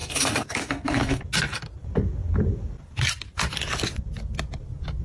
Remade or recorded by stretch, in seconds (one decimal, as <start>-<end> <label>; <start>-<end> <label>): 0.0-1.2 remade; 1.2-5.0 recorded